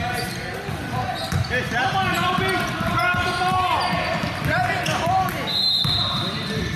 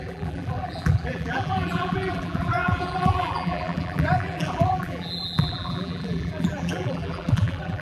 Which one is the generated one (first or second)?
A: second